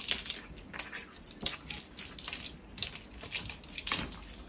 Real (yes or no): yes